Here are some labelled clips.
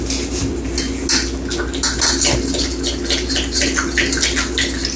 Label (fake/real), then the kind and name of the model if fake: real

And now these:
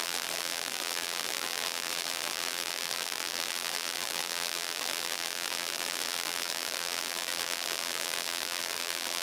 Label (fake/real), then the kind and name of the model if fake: fake, vocoder, BigVGAN v2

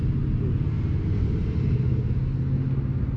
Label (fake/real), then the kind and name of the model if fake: real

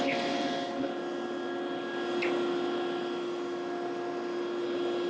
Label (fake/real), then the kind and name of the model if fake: real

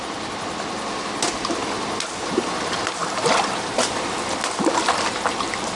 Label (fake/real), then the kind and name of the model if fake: fake, vocoder, BigVGAN v2